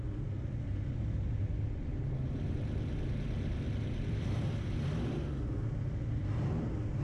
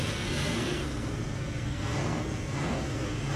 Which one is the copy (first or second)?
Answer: second